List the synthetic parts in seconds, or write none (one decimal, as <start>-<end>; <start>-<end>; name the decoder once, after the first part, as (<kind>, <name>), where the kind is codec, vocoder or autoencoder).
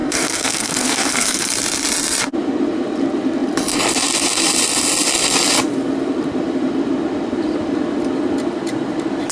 0.0-1.5 (codec, SNAC)